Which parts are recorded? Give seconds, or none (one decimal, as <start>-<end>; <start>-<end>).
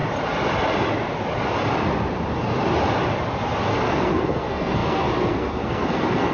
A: 0.0-3.8